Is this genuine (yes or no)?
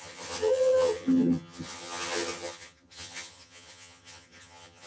no